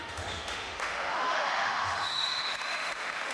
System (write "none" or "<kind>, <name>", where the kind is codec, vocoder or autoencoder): autoencoder, DAC-VAE